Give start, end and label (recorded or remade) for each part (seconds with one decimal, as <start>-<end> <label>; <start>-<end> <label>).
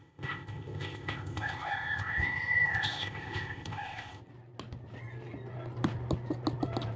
0.0-4.2 remade; 4.2-7.0 recorded